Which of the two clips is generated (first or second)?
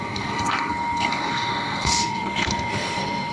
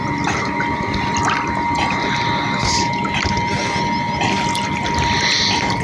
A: first